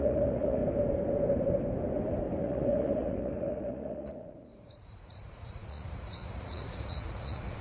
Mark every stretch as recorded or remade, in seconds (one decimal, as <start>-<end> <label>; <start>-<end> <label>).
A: 0.0-0.6 remade; 0.6-2.4 recorded; 2.4-7.6 remade